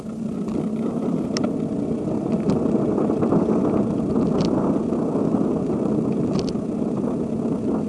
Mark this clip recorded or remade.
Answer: recorded